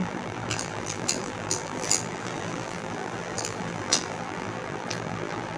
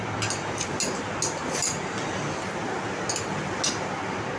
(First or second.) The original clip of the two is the second